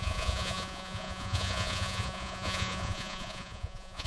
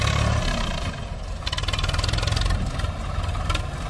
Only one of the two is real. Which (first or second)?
second